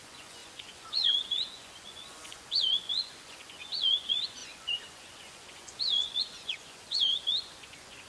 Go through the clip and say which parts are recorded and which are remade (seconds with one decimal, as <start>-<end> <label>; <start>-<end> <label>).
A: 0.0-8.1 remade

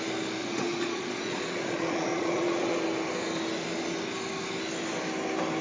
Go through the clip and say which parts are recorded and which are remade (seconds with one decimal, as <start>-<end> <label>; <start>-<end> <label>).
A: 0.0-0.4 recorded; 0.4-2.8 remade; 2.8-5.6 recorded